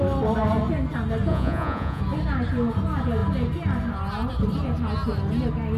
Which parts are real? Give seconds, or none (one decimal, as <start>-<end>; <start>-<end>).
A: 0.0-1.3; 2.0-5.8